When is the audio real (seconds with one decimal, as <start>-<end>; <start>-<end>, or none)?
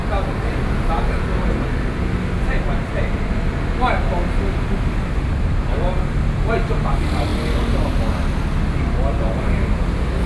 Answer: 0.0-10.3